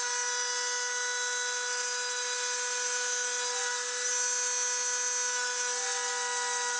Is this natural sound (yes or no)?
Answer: yes